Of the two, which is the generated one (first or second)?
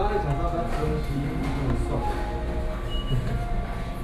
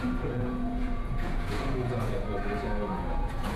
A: second